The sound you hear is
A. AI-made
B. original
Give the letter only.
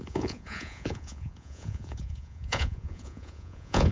A